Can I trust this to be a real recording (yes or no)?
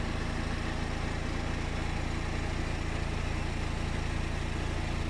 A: yes